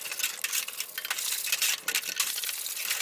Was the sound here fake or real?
real